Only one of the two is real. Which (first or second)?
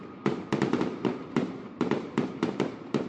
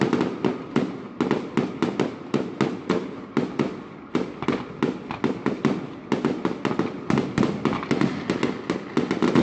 second